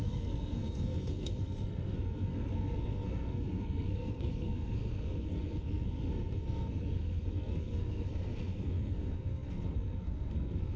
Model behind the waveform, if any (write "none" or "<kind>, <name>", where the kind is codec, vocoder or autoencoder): codec, SNAC